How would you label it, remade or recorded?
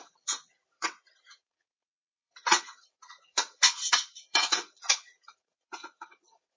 remade